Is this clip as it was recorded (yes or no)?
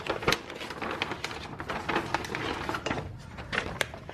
yes